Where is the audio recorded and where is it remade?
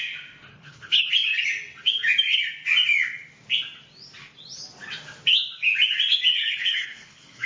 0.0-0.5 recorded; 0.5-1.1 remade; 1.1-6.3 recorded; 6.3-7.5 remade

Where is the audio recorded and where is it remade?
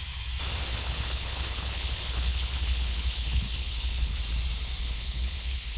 0.0-0.7 recorded; 0.7-4.2 remade; 4.2-4.8 recorded; 4.8-5.8 remade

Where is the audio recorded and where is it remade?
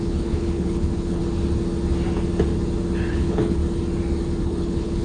0.0-1.2 remade; 1.2-3.1 recorded; 3.1-3.6 remade; 3.6-4.4 recorded; 4.4-5.0 remade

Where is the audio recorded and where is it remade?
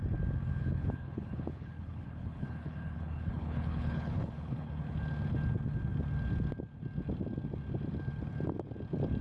0.0-0.6 recorded; 0.6-4.8 remade; 4.8-9.2 recorded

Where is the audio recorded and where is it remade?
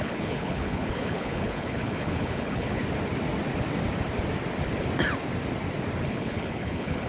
0.0-2.8 remade; 2.8-6.1 recorded; 6.1-7.1 remade